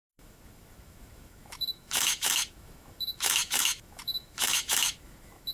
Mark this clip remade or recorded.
remade